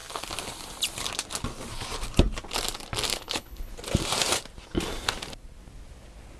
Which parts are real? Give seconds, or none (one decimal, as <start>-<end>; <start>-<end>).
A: 0.0-3.1; 3.7-6.4